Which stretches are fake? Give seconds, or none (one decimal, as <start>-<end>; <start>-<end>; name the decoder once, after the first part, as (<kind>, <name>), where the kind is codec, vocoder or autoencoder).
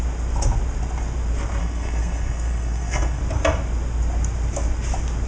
1.6-3.2 (codec, SNAC)